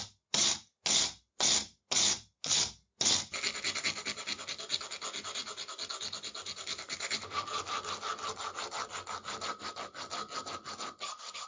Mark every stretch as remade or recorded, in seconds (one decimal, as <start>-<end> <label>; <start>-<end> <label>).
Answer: 0.0-11.5 recorded